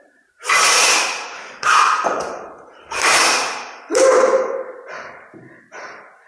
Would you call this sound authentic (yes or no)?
no